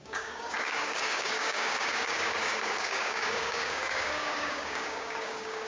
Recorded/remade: remade